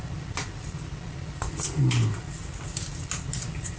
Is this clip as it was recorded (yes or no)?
yes